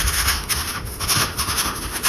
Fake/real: fake